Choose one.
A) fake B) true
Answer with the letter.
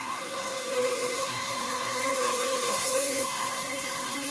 A